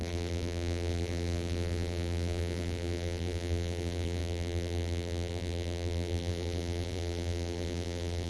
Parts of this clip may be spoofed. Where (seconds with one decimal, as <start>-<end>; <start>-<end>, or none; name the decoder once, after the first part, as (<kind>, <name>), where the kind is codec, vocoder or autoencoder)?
0.0-8.3 (vocoder, BigVGAN v2)